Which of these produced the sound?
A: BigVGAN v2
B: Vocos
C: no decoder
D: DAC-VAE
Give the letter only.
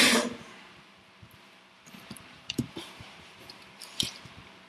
A